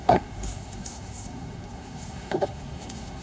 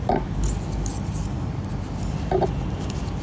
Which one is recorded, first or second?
second